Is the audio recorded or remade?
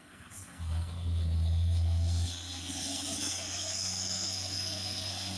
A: remade